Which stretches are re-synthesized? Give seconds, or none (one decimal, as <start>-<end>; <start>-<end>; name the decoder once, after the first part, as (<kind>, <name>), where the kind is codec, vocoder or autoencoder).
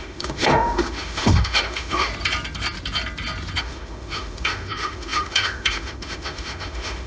0.0-2.1 (autoencoder, DAC-VAE); 3.6-7.1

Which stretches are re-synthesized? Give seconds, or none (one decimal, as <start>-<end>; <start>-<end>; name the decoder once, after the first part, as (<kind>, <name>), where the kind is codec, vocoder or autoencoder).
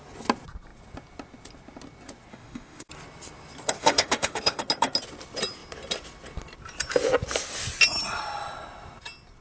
2.3-2.9 (autoencoder, DAC-VAE); 3.8-4.6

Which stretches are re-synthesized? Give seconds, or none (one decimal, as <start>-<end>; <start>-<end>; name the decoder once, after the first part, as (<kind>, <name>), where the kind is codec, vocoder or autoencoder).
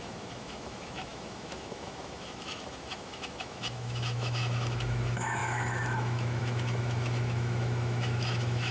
0.0-8.7 (autoencoder, DAC-VAE)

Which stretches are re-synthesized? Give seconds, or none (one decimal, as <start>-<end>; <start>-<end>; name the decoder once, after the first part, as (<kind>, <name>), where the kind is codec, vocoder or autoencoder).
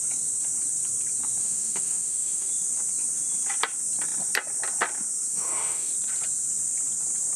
1.4-2.5 (autoencoder, DAC-VAE); 5.3-5.9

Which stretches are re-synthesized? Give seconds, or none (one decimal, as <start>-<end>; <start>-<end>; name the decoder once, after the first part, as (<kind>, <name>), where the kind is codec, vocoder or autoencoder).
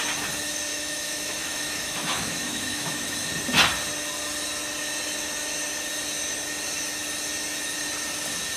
0.7-3.3 (autoencoder, DAC-VAE)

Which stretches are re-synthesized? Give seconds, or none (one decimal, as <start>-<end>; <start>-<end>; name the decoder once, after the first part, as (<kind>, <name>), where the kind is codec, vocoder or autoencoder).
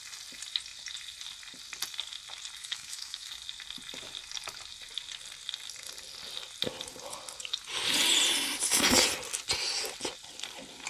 2.6-3.3 (autoencoder, DAC-VAE)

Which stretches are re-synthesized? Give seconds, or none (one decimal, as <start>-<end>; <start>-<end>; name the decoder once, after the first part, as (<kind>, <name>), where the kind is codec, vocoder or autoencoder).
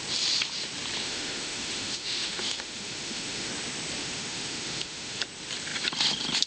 1.0-3.5 (autoencoder, DAC-VAE); 4.0-5.2